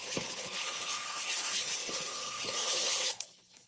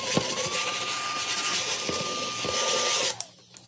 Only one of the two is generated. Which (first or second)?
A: first